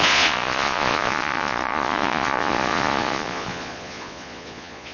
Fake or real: fake